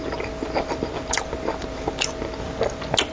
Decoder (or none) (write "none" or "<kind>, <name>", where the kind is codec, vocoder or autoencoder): none